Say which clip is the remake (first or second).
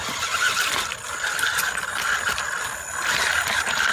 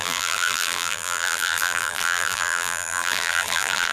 second